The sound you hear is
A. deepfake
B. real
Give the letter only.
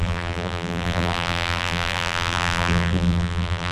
A